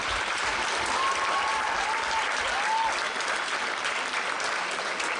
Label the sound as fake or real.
real